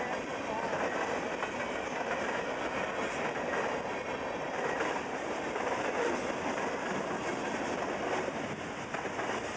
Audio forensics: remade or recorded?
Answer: recorded